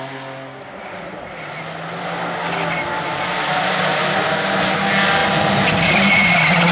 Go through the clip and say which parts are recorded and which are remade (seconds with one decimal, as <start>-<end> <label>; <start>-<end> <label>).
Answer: 0.0-6.7 recorded